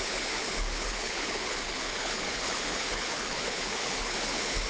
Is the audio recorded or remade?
remade